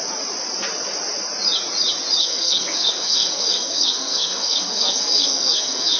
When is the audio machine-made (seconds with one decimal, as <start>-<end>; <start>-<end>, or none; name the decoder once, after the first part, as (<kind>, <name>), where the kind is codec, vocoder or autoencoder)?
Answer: 2.2-6.0 (codec, SNAC)